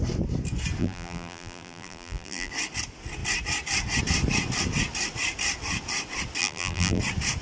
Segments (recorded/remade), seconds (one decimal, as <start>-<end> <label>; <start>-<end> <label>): 0.0-0.8 recorded; 0.8-2.5 remade; 2.5-6.4 recorded; 6.4-7.0 remade; 7.0-7.4 recorded